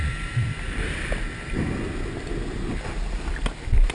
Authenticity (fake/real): real